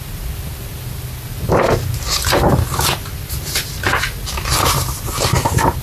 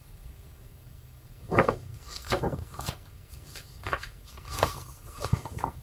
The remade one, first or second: second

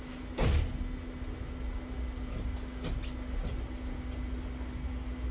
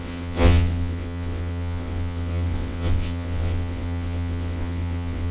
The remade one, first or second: second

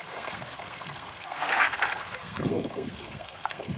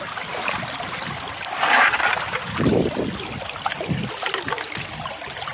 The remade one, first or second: first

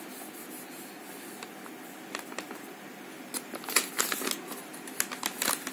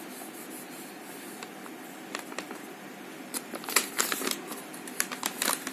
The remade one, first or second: second